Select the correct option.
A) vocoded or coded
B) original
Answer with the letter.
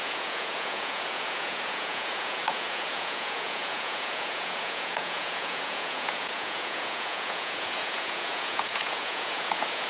A